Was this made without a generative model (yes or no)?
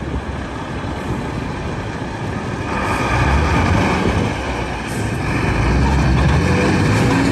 yes